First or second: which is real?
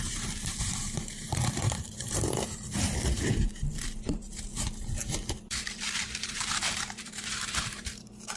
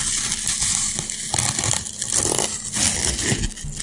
second